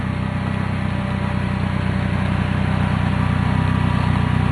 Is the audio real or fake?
real